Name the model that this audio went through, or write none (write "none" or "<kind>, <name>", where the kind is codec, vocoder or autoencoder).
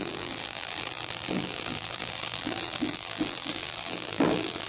vocoder, BigVGAN v2